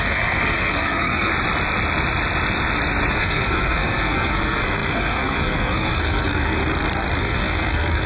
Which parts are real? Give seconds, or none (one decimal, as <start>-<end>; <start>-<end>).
1.3-3.1; 6.6-7.2